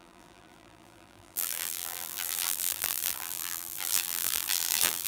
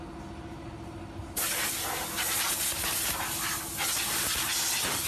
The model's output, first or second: first